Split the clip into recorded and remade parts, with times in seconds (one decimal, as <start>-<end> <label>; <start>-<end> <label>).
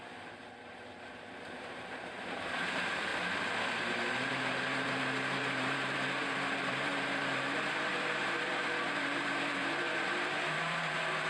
0.0-3.1 remade; 3.1-4.3 recorded; 4.3-11.3 remade